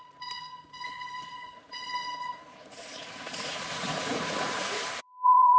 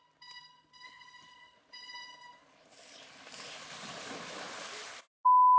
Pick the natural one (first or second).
second